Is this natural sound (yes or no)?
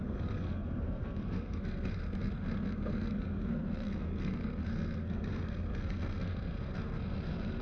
no